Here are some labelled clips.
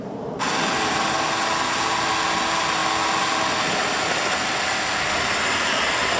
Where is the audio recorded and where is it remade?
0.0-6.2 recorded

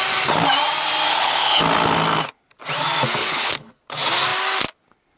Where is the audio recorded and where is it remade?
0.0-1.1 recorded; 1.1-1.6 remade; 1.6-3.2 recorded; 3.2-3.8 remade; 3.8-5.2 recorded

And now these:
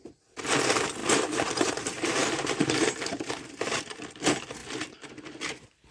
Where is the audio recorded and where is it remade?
0.0-1.0 recorded; 1.0-1.7 remade; 1.7-2.2 recorded; 2.2-4.0 remade; 4.0-5.9 recorded

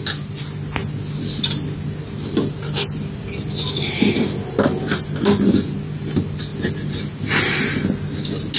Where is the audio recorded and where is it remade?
0.0-8.6 recorded

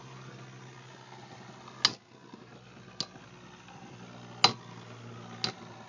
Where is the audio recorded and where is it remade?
0.0-5.9 recorded

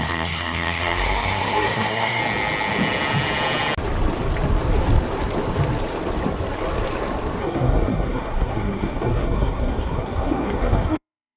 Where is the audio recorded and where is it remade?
0.0-2.2 remade; 2.2-7.4 recorded; 7.4-11.4 remade

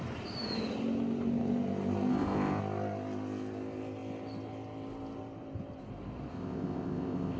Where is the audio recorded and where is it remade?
0.0-2.1 recorded; 2.1-2.6 remade; 2.6-6.3 recorded; 6.3-7.4 remade